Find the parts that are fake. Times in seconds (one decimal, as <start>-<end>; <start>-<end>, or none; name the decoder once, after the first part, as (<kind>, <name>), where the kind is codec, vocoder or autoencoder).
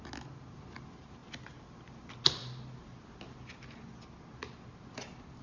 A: none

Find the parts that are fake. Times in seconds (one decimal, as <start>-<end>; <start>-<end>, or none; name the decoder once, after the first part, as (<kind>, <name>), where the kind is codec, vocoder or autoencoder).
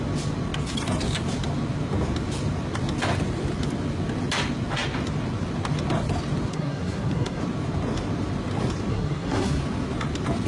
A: 6.5-7.4 (codec, SNAC); 8.9-9.6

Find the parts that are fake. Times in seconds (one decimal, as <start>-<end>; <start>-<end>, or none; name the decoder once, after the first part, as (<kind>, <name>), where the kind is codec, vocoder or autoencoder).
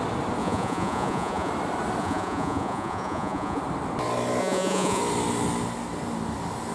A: 0.4-1.5 (vocoder, Vocos); 2.0-3.6; 4.4-5.0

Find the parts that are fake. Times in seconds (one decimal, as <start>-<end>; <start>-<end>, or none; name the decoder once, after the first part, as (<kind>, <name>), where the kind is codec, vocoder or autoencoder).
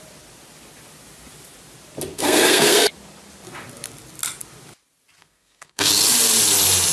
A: 2.1-2.8 (codec, SNAC); 5.2-5.9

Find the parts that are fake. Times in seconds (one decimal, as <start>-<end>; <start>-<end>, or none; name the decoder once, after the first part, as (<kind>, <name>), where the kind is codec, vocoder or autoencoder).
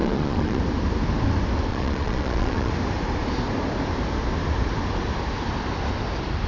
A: 0.0-0.6 (vocoder, Vocos); 1.7-2.7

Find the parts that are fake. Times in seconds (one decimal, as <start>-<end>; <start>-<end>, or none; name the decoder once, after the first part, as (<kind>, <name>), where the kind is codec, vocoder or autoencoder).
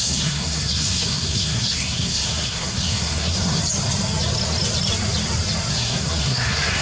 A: 0.0-3.6 (codec, SNAC); 5.7-6.8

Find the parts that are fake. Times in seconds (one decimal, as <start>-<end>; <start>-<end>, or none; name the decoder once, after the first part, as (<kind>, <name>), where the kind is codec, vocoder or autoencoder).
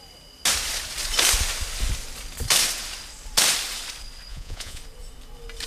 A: 4.3-4.8 (vocoder, Vocos)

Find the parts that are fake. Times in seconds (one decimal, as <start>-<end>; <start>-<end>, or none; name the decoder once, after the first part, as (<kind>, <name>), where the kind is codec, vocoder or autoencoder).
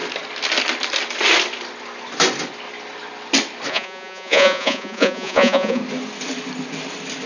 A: 3.7-5.8 (vocoder, Vocos)